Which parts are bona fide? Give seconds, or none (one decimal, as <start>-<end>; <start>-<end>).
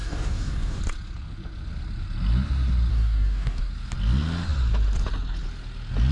0.8-2.9; 3.7-6.1